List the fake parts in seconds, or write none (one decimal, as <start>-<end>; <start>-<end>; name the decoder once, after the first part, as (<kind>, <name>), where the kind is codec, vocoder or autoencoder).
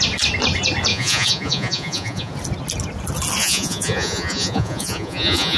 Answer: 0.9-2.3 (vocoder, Vocos); 3.4-5.6